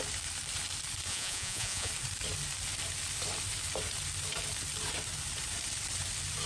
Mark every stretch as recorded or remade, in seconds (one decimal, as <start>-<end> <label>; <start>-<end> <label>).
0.0-1.1 recorded; 1.1-1.9 remade; 1.9-6.5 recorded